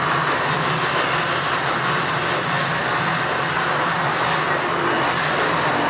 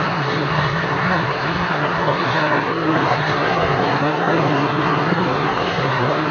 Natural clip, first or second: first